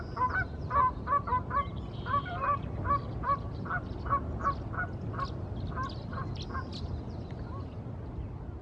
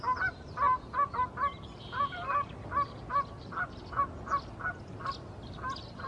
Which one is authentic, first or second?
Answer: second